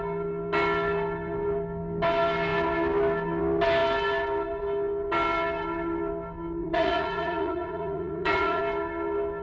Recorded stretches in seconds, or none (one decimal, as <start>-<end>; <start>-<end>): 0.0-6.6; 8.6-9.4